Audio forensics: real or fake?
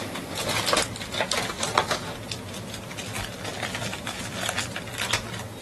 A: real